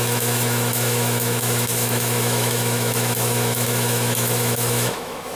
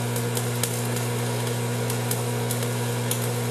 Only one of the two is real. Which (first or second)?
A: second